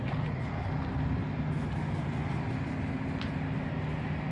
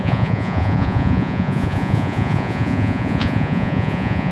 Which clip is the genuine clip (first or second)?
first